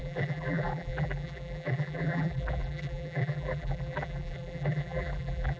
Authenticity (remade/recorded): remade